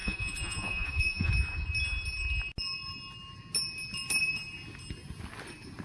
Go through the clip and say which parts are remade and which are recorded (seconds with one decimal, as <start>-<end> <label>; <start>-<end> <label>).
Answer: 0.0-1.3 remade; 1.3-5.8 recorded